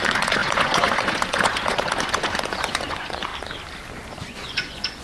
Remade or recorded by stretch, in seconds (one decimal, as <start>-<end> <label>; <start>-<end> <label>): 0.0-3.3 remade; 3.3-4.2 recorded; 4.2-5.0 remade